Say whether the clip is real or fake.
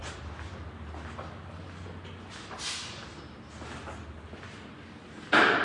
real